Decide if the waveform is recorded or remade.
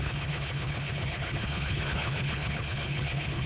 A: remade